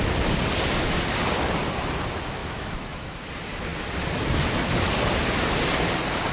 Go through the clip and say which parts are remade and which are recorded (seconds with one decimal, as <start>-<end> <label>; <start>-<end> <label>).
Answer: 0.0-2.4 recorded; 2.4-3.2 remade; 3.2-6.3 recorded